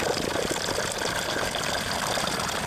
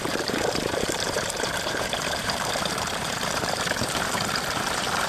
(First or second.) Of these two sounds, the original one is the first